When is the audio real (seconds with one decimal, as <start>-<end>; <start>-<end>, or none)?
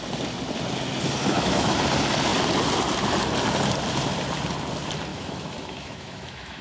0.0-1.2; 1.8-5.1